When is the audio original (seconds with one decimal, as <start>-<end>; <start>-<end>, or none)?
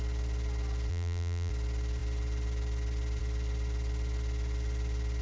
0.0-0.9; 1.5-5.2